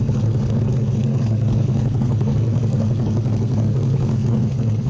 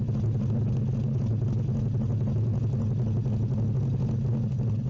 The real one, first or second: second